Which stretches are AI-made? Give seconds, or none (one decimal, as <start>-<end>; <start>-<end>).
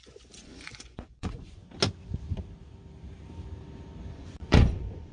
0.0-1.6; 4.1-5.1